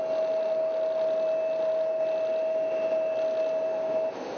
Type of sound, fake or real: real